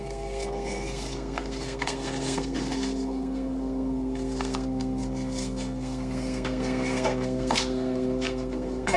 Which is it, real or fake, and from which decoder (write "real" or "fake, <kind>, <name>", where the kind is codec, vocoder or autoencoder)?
fake, codec, SNAC